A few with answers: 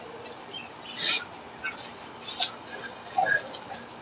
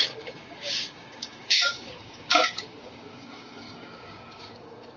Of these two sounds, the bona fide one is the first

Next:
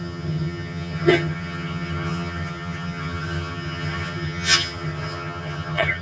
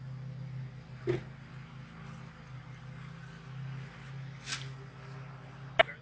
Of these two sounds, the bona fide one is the second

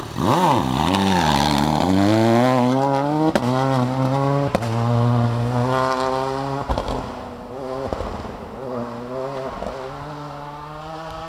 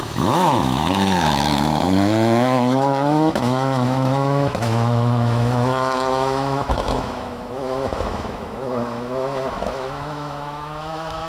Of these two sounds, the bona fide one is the first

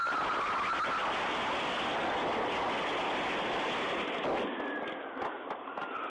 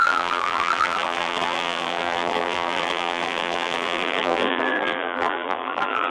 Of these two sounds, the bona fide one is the first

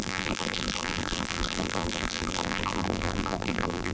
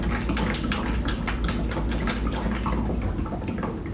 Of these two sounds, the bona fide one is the second